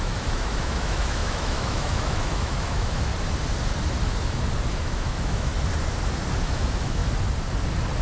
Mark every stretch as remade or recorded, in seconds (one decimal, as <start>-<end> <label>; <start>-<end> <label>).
0.0-3.1 remade; 3.1-4.8 recorded; 4.8-5.5 remade; 5.5-6.4 recorded; 6.4-7.0 remade; 7.0-8.0 recorded